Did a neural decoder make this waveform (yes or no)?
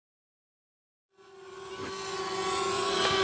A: no